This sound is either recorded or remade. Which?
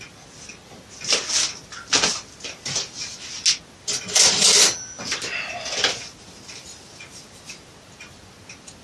recorded